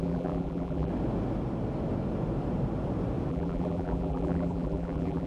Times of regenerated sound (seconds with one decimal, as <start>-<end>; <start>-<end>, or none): 0.0-0.9; 3.3-5.3